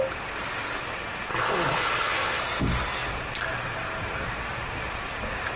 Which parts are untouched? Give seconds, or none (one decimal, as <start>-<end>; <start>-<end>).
0.0-1.3; 2.4-5.6